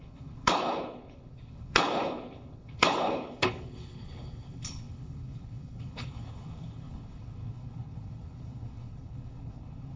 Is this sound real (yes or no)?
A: no